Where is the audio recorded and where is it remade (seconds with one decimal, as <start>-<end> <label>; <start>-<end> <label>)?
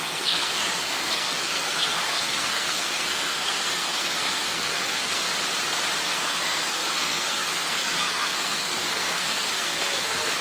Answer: 0.0-5.3 remade; 5.3-6.0 recorded; 6.0-10.4 remade